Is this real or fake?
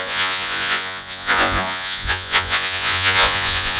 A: fake